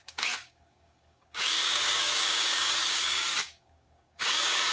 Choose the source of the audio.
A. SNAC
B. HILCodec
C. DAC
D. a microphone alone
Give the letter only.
C